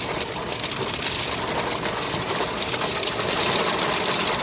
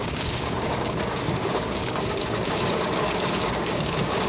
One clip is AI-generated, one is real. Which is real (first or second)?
first